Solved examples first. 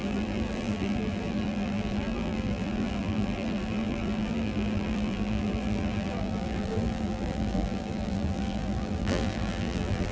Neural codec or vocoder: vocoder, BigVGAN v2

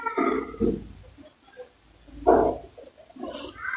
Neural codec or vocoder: none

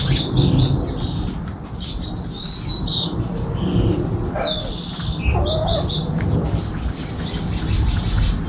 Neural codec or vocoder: none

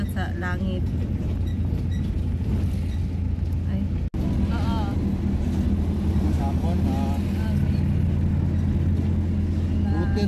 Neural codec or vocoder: none